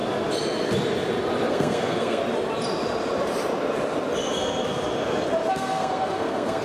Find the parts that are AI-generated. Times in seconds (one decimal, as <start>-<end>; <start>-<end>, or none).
1.5-2.2; 5.5-6.6